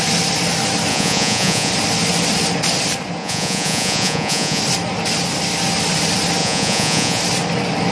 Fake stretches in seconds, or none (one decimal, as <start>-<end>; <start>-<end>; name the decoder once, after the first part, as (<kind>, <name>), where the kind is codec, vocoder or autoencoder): 0.9-1.7 (vocoder, Vocos); 3.2-4.6; 6.4-7.2